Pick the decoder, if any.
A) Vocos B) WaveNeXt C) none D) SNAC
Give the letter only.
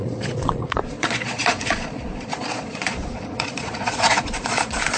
A